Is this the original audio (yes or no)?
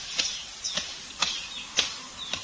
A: yes